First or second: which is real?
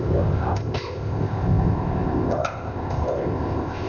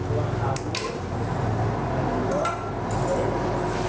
second